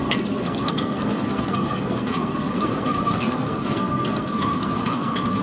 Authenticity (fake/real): fake